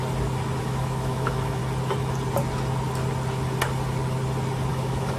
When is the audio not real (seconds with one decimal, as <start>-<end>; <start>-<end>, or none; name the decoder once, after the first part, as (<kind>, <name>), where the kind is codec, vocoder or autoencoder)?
0.6-1.6 (autoencoder, DAC-VAE); 4.7-5.2